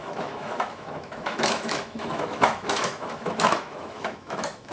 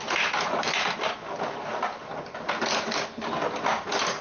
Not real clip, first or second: first